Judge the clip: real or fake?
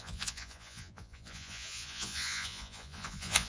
fake